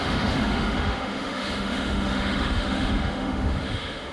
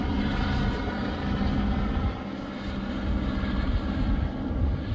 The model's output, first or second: first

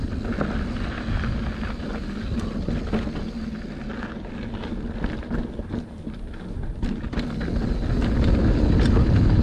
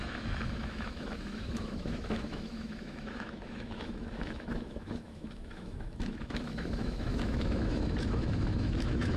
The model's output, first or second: second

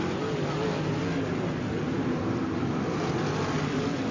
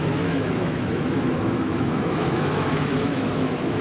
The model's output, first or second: second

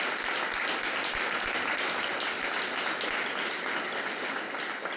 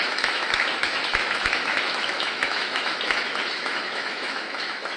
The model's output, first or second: second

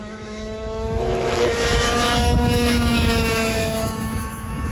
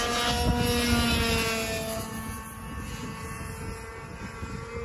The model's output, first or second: first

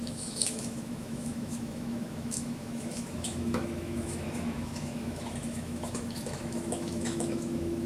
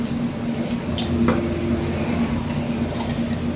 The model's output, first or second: first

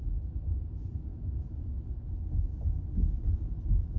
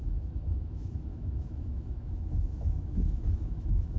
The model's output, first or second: second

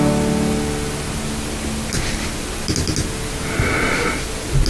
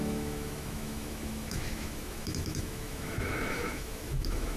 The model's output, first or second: second